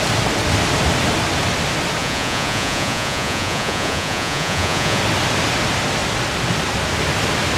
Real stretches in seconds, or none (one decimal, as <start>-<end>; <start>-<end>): 0.0-2.0; 5.0-7.6